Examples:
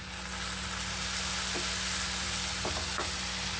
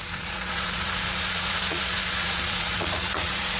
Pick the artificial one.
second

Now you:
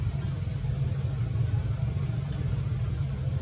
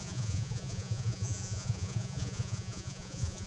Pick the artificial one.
second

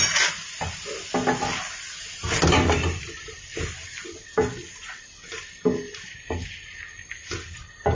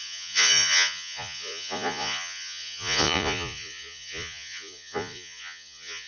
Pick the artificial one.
second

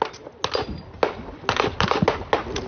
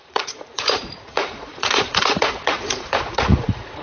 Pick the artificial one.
second